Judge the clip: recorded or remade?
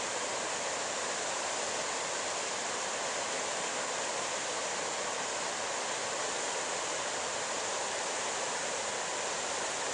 recorded